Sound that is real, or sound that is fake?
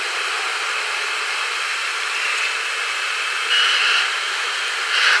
real